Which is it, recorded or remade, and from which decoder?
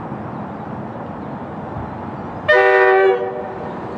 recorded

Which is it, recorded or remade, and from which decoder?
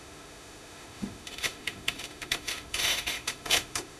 remade, autoencoder, DAC-VAE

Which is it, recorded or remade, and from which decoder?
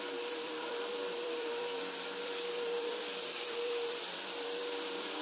remade, vocoder, BigVGAN v2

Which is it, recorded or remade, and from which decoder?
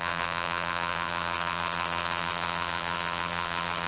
remade, vocoder, BigVGAN v2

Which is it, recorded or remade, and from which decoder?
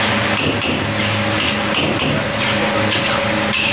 recorded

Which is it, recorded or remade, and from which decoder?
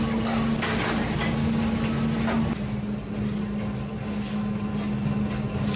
recorded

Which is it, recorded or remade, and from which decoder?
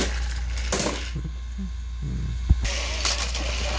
recorded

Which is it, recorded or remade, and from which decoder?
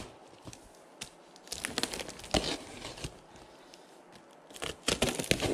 recorded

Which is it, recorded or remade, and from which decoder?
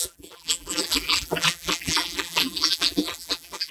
remade, vocoder, BigVGAN v2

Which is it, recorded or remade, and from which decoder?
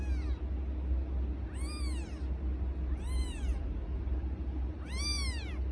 recorded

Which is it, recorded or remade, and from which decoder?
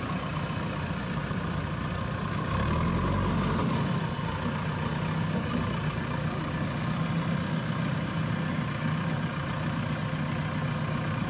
recorded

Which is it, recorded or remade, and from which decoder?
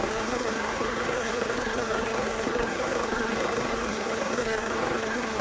remade, codec, SNAC